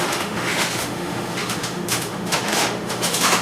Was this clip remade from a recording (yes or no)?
yes